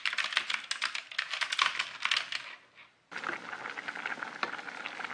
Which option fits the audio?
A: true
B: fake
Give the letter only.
A